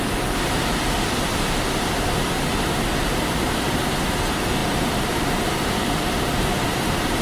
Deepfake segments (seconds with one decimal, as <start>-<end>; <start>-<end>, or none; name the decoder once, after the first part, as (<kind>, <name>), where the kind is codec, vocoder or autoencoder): none